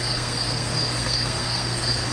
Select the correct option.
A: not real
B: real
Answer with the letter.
A